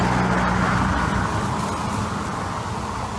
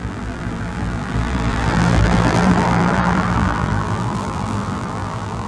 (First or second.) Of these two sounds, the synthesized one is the second